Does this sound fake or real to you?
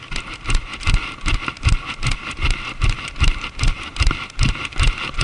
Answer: real